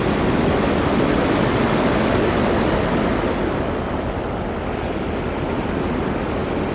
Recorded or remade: recorded